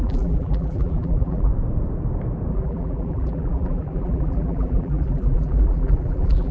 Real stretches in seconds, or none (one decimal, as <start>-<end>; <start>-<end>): 1.5-2.5